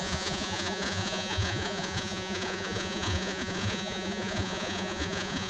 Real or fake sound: fake